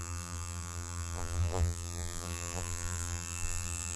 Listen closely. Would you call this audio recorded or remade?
remade